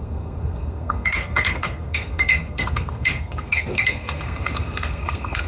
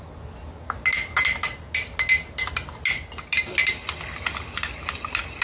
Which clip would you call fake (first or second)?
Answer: first